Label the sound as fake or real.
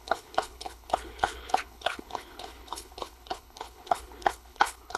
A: fake